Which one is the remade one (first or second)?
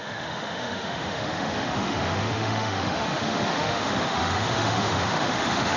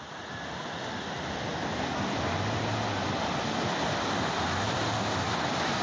first